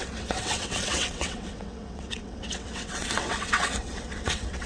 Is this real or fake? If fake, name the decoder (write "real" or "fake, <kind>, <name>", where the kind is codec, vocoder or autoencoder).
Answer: fake, vocoder, WaveNeXt